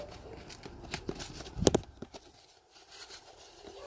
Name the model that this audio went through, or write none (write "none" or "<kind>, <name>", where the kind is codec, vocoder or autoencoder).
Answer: none